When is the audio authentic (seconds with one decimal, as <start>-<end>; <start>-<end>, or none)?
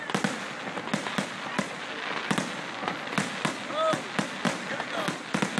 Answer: 0.0-5.6